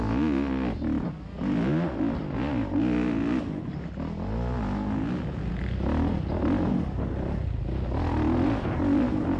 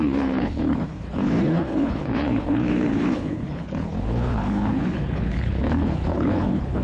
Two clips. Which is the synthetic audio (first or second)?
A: second